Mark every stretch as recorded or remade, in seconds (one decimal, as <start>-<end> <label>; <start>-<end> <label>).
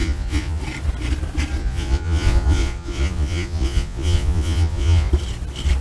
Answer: 0.0-0.6 remade; 0.6-1.6 recorded; 1.6-5.1 remade; 5.1-5.8 recorded